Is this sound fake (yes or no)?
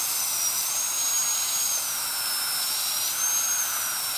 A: no